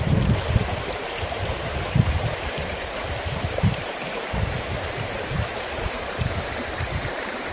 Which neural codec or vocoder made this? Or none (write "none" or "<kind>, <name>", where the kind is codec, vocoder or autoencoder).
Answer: vocoder, BigVGAN v2